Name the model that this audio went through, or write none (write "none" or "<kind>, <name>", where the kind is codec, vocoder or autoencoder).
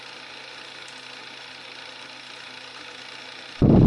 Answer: none